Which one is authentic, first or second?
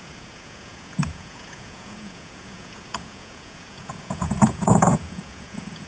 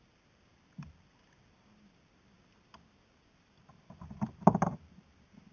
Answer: second